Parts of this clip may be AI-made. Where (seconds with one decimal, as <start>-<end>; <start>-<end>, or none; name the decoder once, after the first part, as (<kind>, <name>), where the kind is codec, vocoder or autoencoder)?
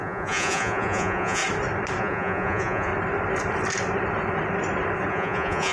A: 0.0-1.4 (vocoder, Vocos); 2.0-2.9; 5.1-5.7